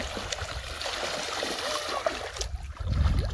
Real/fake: real